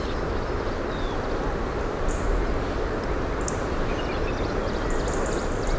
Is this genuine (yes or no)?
yes